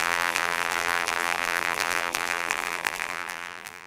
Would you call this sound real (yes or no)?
no